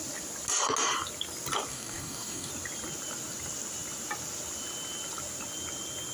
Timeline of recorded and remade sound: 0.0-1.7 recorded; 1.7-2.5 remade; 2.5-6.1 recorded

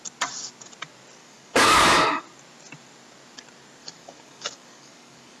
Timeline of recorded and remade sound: 0.0-1.2 recorded; 1.2-2.2 remade; 2.2-3.8 recorded; 3.8-5.4 remade

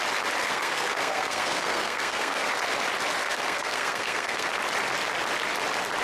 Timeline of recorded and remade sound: 0.0-0.4 recorded; 0.4-2.5 remade; 2.5-3.2 recorded; 3.2-4.5 remade; 4.5-6.0 recorded

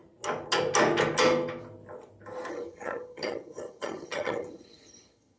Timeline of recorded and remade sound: 0.0-2.5 recorded; 2.5-5.4 remade

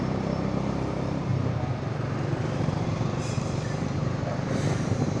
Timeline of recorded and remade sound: 0.0-1.3 remade; 1.3-2.4 recorded; 2.4-5.2 remade

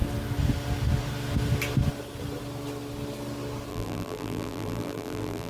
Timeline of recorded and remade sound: 0.0-3.7 recorded; 3.7-5.5 remade